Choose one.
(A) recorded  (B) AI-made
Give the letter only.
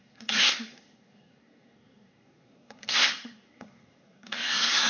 B